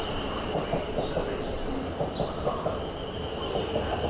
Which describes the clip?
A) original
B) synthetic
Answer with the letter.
A